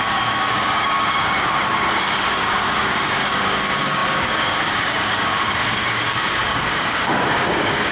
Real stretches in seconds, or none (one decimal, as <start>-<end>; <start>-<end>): none